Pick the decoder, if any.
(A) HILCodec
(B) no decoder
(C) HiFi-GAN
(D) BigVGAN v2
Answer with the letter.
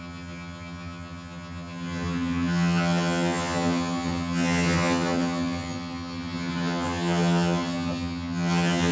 C